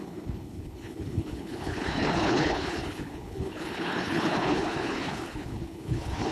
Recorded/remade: remade